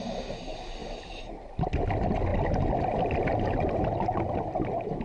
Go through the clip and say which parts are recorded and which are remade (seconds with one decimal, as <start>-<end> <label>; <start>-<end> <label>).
0.0-5.0 recorded